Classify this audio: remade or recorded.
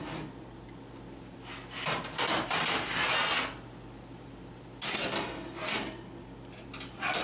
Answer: recorded